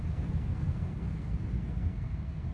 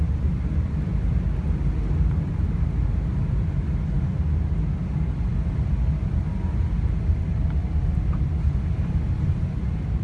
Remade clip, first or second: first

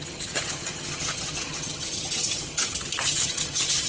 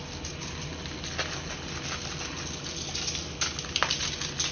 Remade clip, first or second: first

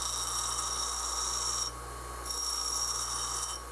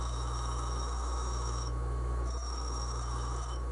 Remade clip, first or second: second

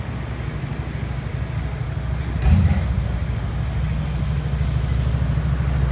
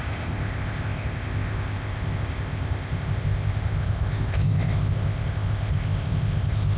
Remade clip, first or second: second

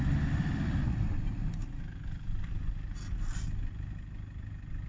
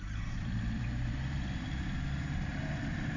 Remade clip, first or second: second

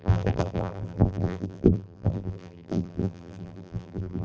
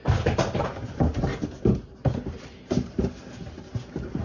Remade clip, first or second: first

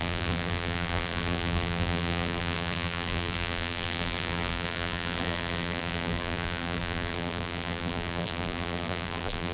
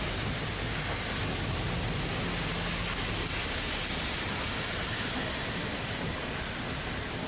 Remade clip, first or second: first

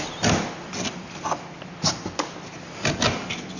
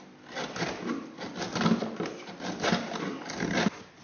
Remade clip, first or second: second